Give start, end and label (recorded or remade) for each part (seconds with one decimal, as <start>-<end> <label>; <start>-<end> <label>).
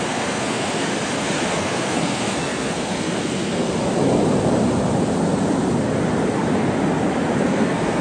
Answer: 0.0-0.9 remade; 0.9-1.5 recorded; 1.5-3.7 remade; 3.7-7.5 recorded; 7.5-8.0 remade